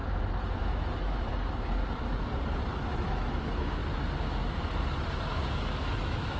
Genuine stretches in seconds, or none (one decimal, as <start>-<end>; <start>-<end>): 0.0-0.5; 1.3-2.9; 3.8-5.3